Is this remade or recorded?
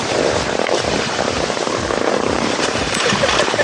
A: remade